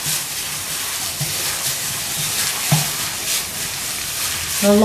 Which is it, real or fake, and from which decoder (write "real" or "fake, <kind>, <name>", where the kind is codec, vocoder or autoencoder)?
real